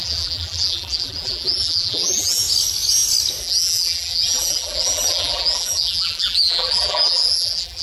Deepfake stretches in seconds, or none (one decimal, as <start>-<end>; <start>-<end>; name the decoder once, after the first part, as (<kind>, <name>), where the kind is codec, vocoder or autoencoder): 0.0-2.4 (vocoder, BigVGAN v2); 3.4-7.8